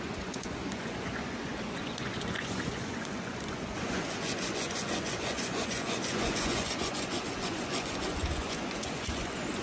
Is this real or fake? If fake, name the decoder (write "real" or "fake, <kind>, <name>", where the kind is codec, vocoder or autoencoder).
fake, vocoder, Vocos